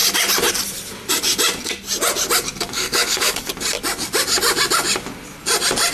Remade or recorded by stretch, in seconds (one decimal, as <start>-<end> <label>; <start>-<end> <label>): 0.0-2.5 recorded; 2.5-3.5 remade; 3.5-5.9 recorded